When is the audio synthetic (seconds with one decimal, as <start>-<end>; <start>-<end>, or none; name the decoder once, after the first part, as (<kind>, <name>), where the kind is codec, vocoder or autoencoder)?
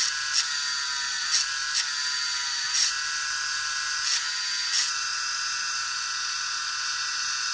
none